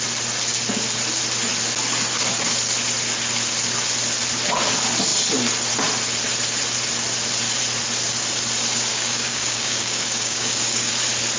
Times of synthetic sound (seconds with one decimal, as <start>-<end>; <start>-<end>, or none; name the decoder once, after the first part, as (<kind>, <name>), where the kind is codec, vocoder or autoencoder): 8.9-10.9 (codec, DAC)

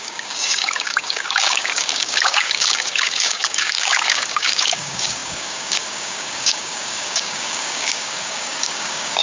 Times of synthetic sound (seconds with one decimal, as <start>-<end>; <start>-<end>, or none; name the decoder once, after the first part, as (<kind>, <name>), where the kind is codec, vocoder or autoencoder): 0.0-9.2 (codec, DAC)

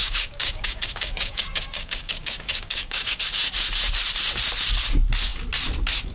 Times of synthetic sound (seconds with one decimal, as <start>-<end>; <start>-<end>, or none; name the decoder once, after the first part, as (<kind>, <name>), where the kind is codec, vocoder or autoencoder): 0.0-3.2 (codec, DAC)

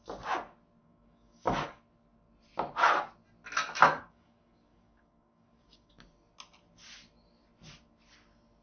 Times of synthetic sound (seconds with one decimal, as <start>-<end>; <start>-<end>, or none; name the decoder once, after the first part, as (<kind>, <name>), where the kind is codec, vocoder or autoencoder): 0.8-1.8 (codec, DAC); 3.9-5.9

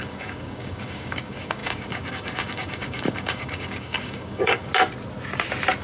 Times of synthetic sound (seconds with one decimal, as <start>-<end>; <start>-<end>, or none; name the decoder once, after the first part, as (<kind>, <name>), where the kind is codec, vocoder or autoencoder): 0.0-4.7 (codec, DAC)